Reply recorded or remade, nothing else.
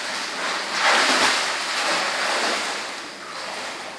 recorded